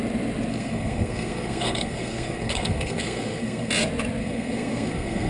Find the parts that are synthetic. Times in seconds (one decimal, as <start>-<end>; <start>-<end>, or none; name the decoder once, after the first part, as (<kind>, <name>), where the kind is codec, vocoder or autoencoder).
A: 0.5-3.7 (codec, SNAC); 4.2-5.3